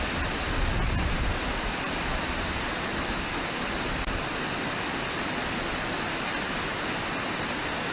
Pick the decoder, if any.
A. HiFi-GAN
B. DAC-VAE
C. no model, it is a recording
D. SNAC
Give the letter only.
C